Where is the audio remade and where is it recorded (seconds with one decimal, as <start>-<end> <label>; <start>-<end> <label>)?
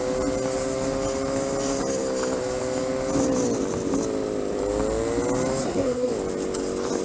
0.0-5.6 recorded; 5.6-6.1 remade; 6.1-7.0 recorded